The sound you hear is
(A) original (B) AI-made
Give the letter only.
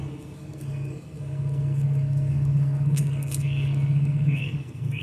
B